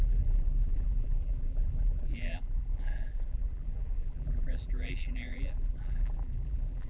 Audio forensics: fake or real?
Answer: fake